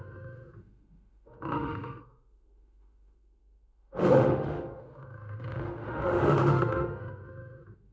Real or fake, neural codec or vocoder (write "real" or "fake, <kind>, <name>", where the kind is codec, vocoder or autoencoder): fake, autoencoder, DAC-VAE